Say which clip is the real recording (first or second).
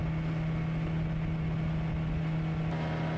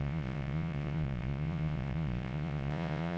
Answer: first